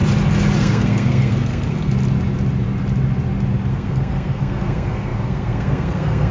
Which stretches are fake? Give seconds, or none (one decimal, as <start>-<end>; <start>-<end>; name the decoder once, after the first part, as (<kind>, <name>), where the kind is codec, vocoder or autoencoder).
0.6-1.9 (codec, SNAC); 3.7-6.3